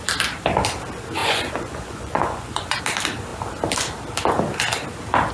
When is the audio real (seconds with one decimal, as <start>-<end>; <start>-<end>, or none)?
0.0-1.2; 2.8-5.3

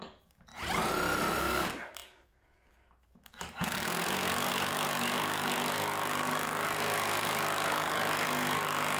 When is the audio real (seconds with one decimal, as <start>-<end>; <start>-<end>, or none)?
0.5-1.4

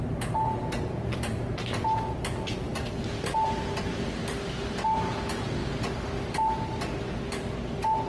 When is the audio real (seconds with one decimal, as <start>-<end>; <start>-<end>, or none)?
0.0-8.1

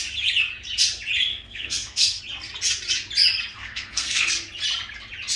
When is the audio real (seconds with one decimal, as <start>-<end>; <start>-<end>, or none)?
0.0-1.3; 2.2-3.5; 4.3-5.4

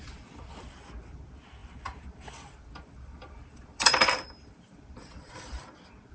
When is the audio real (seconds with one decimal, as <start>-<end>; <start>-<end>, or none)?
0.0-1.6; 5.3-6.1

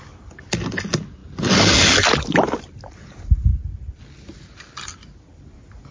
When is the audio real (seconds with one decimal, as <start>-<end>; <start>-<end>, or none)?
0.0-5.9

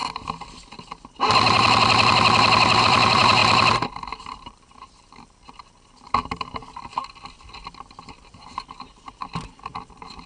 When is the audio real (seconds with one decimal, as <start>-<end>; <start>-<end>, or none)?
0.0-2.8; 3.4-4.2; 6.6-8.1

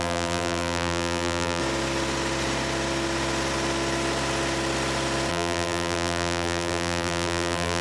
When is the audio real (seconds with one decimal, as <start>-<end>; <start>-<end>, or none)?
1.6-5.3